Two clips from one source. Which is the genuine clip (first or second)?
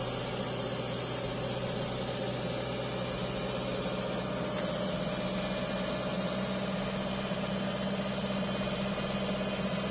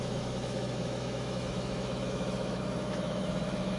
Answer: first